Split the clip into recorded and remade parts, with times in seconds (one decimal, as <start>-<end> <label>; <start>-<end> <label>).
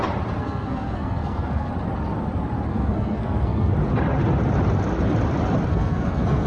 0.0-0.4 recorded; 0.4-1.7 remade; 1.7-2.7 recorded; 2.7-3.7 remade; 3.7-5.7 recorded; 5.7-6.5 remade